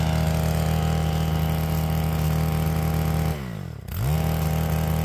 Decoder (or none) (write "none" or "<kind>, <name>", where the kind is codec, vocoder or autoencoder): none